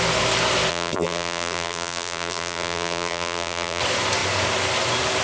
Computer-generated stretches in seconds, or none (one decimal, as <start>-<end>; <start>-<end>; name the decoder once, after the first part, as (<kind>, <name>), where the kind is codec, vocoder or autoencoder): 0.7-3.8 (vocoder, BigVGAN v2)